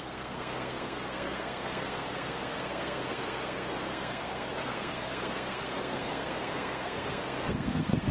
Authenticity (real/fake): fake